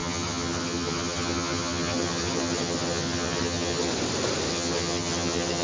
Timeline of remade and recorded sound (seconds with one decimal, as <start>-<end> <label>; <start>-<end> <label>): 0.0-3.9 remade; 3.9-4.5 recorded; 4.5-5.6 remade